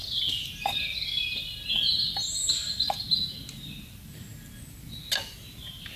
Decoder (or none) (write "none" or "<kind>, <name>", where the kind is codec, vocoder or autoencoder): none